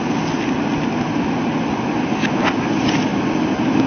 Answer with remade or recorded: recorded